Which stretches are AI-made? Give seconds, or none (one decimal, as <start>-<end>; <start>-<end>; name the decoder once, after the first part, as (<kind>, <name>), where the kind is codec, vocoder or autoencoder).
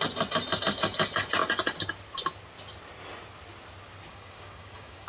4.1-5.1 (codec, DAC)